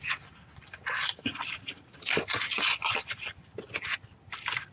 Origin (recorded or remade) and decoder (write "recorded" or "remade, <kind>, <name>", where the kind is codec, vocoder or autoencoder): recorded